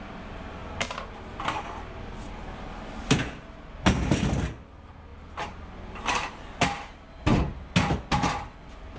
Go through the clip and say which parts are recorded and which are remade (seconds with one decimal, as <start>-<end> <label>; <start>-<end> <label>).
0.0-9.0 recorded